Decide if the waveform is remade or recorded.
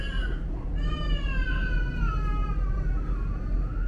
recorded